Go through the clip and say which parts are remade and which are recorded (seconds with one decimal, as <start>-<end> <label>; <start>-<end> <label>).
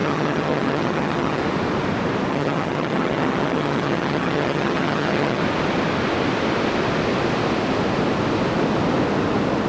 0.0-1.4 remade; 1.4-2.3 recorded; 2.3-5.4 remade; 5.4-9.7 recorded